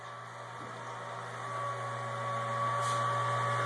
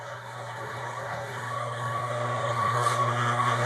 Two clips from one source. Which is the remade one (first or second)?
second